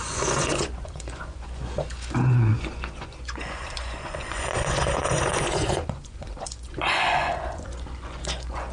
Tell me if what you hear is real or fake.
fake